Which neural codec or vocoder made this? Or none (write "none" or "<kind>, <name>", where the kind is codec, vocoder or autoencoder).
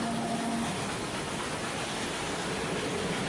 none